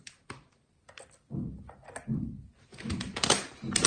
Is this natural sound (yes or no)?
yes